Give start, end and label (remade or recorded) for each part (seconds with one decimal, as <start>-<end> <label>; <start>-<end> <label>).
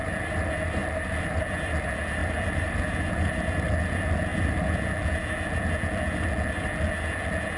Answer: 0.0-0.8 recorded; 0.8-1.3 remade; 1.3-2.2 recorded; 2.2-2.8 remade; 2.8-7.6 recorded